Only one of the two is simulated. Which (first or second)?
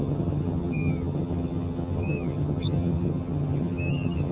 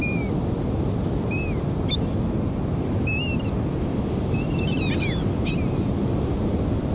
first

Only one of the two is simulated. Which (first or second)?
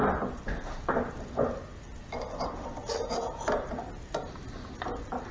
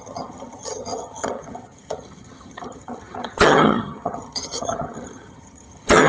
second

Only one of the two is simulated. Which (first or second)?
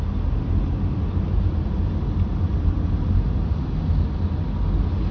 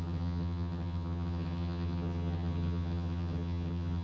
second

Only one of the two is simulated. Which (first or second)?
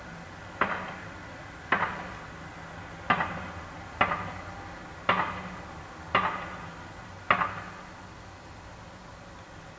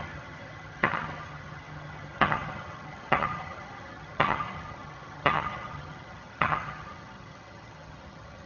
second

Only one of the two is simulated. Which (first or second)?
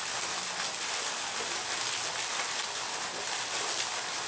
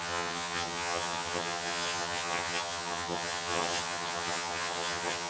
second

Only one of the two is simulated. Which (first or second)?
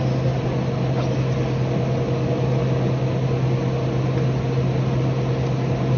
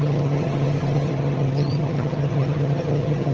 second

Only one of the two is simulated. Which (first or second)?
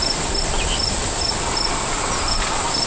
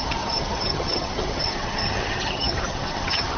second